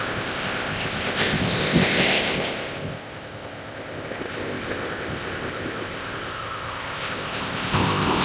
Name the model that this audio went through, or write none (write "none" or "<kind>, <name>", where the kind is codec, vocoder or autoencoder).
codec, ZipCodec